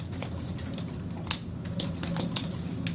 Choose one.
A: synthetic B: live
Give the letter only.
B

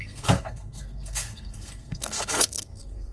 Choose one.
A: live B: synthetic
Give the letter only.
B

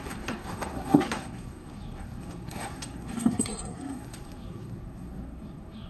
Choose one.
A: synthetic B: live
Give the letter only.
A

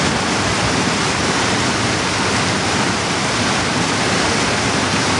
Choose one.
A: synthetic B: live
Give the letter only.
B